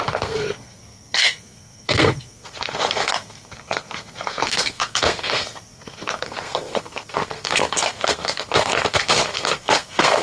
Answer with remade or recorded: remade